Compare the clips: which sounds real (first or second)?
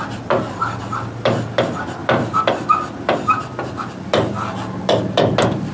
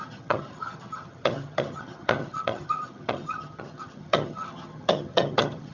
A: first